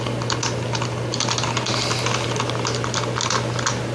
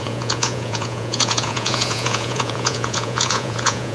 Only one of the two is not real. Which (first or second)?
second